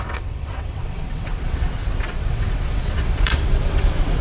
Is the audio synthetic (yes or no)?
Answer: yes